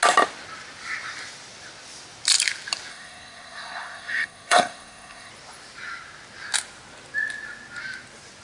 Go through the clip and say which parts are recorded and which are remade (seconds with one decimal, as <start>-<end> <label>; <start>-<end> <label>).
0.0-2.9 recorded; 2.9-5.3 remade; 5.3-8.4 recorded